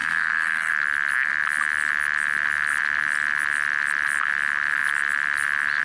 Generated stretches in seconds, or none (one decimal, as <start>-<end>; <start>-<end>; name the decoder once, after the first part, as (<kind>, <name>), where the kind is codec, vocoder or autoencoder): 0.0-0.7 (codec, SNAC)